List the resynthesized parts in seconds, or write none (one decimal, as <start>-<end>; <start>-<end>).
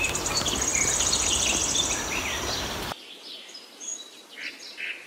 none